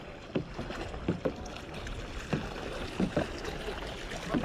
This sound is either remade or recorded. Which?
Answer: recorded